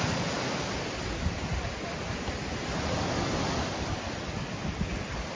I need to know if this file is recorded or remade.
recorded